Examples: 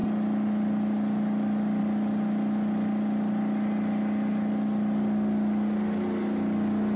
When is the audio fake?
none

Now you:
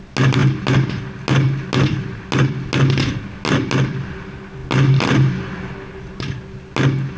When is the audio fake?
none

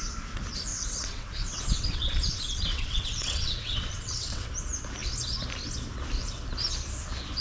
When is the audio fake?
0.7-4.5